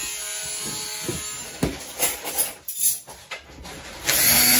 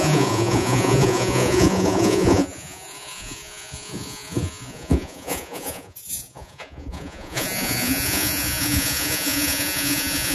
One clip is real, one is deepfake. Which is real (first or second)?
first